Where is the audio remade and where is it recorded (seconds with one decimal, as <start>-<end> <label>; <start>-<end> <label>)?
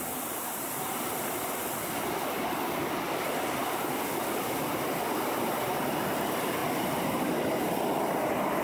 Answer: 0.0-8.6 recorded